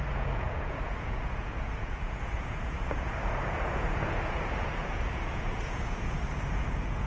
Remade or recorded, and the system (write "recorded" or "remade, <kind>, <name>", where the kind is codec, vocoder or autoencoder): remade, vocoder, Vocos